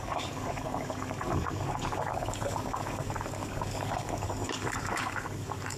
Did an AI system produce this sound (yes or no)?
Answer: yes